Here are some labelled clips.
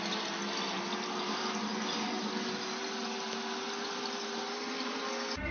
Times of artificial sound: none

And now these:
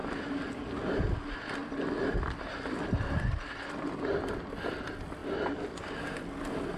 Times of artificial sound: none

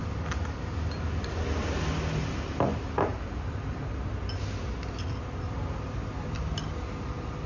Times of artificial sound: 3.1-4.1 (vocoder, BigVGAN v2)